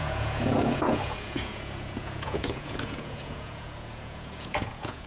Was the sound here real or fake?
fake